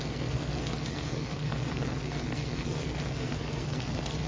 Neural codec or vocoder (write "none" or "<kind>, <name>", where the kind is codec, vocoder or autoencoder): codec, SNAC